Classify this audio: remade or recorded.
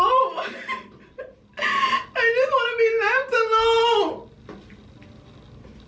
recorded